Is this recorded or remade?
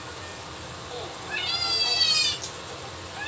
recorded